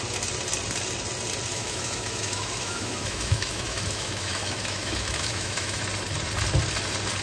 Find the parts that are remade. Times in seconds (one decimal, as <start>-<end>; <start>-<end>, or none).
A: 1.5-5.8